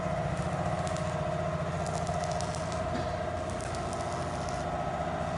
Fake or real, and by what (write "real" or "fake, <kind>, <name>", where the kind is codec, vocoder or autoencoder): real